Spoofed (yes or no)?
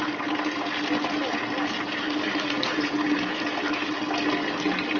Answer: no